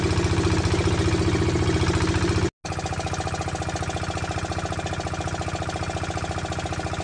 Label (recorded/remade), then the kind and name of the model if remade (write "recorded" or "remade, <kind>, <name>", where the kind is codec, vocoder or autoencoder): recorded